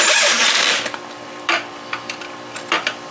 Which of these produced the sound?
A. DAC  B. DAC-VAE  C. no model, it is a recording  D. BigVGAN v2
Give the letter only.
D